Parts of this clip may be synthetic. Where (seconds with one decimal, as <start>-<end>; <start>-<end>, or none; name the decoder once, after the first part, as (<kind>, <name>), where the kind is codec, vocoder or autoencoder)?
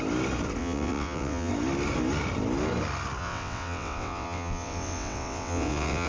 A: 0.6-1.5 (vocoder, WaveNeXt); 3.2-6.1